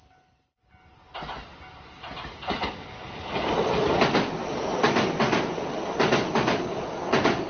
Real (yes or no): yes